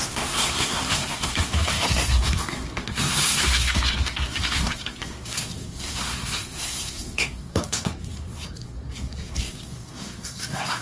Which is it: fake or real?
fake